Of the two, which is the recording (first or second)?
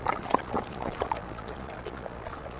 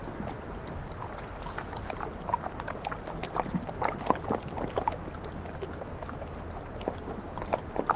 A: second